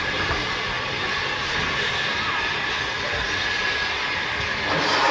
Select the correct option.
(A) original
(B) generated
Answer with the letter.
A